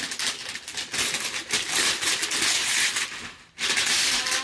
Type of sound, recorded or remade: recorded